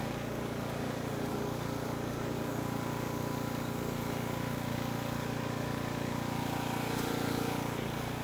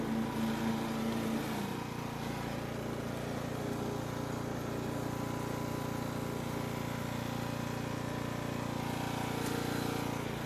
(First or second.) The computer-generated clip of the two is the first